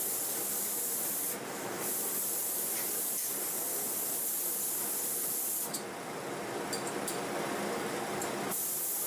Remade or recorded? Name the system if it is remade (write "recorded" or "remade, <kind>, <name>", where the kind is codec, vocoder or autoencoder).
recorded